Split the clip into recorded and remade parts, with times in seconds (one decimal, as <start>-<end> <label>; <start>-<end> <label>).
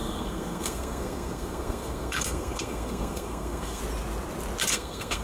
0.0-3.8 remade; 3.8-4.7 recorded; 4.7-5.2 remade